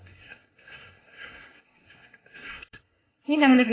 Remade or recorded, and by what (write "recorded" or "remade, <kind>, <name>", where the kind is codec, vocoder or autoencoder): remade, codec, SNAC